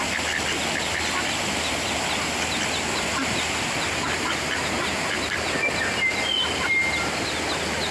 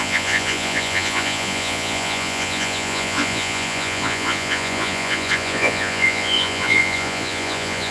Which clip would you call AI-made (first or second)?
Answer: second